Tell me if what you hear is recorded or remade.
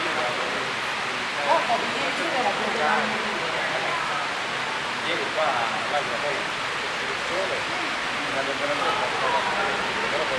recorded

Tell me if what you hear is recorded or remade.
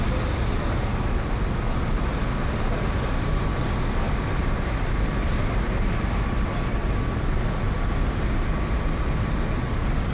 recorded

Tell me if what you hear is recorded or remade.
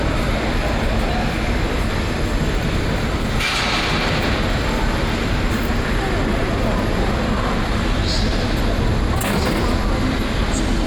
recorded